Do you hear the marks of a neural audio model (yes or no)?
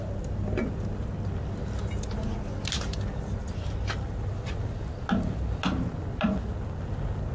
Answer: no